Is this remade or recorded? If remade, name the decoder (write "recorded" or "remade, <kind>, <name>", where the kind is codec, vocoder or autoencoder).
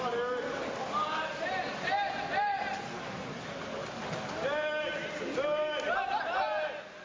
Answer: recorded